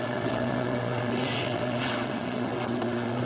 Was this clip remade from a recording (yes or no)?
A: yes